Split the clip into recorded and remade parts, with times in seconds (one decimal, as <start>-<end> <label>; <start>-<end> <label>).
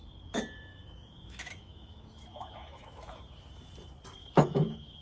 0.0-0.7 recorded; 0.7-3.2 remade; 3.2-4.2 recorded; 4.2-5.0 remade